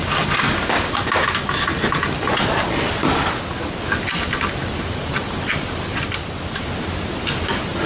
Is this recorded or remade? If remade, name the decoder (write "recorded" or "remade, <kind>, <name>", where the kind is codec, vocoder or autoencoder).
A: recorded